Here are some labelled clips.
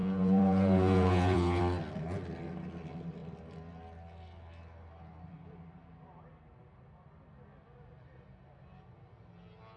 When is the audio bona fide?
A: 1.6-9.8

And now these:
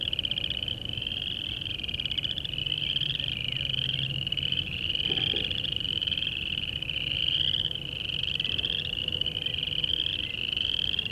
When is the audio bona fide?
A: 0.0-11.1

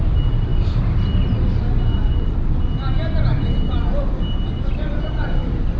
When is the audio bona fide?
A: 0.0-5.8

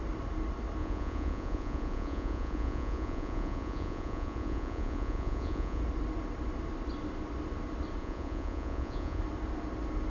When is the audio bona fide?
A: 0.0-0.8; 5.8-8.0; 9.2-10.1

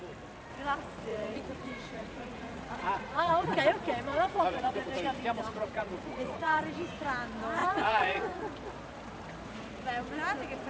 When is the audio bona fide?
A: 0.0-1.1; 3.6-4.1; 4.9-5.5; 6.6-7.6; 8.4-10.7